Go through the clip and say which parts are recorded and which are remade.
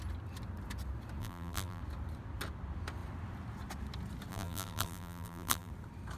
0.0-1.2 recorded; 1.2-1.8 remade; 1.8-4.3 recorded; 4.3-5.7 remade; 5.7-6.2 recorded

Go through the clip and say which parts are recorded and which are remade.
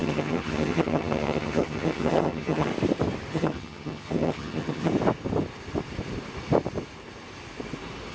0.0-2.7 remade; 2.7-3.3 recorded; 3.3-4.9 remade; 4.9-8.1 recorded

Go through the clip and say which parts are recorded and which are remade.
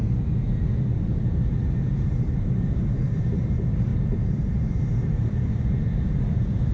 0.0-6.7 remade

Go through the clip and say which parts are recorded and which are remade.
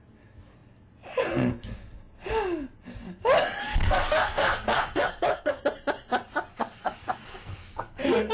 0.0-3.6 recorded; 3.6-5.6 remade; 5.6-6.5 recorded; 6.5-8.3 remade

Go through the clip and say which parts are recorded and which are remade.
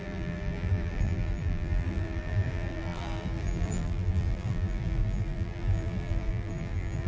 0.0-7.1 remade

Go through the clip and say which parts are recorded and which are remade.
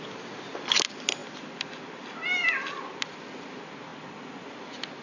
0.0-5.0 recorded